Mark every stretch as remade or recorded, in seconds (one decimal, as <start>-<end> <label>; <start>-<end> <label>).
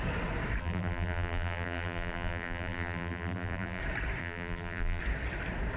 0.0-0.6 recorded; 0.6-3.8 remade; 3.8-4.2 recorded; 4.2-5.0 remade; 5.0-5.8 recorded